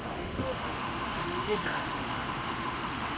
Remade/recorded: remade